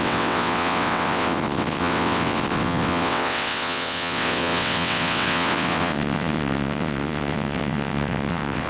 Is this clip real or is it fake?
fake